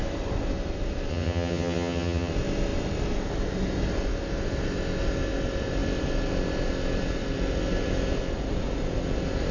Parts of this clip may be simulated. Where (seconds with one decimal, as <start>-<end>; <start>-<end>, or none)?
1.1-2.3